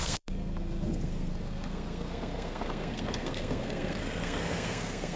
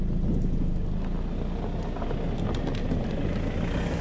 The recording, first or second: second